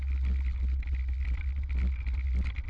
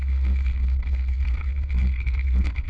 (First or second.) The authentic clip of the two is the first